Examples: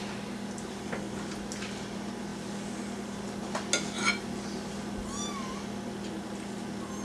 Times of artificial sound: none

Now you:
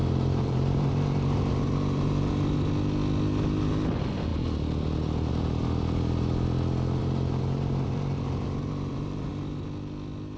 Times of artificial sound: 0.0-2.3 (vocoder, BigVGAN v2); 7.0-9.3

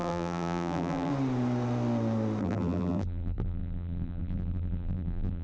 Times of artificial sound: 0.0-1.1 (vocoder, BigVGAN v2); 2.4-5.4

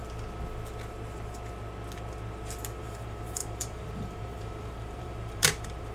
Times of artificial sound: 2.8-5.9 (vocoder, BigVGAN v2)

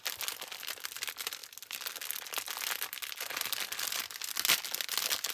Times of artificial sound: none

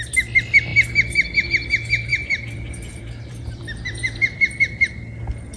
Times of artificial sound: 2.1-4.9 (vocoder, BigVGAN v2)